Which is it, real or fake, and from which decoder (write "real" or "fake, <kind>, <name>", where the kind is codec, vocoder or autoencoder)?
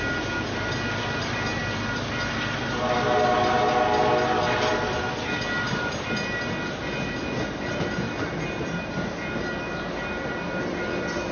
real